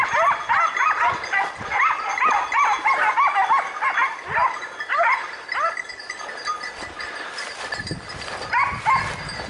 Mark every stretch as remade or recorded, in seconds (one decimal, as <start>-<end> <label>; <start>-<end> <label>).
0.0-4.4 recorded; 4.4-7.8 remade; 7.8-9.5 recorded